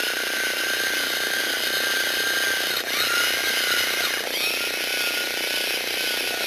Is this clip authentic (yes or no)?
yes